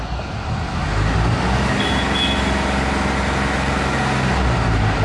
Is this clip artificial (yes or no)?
no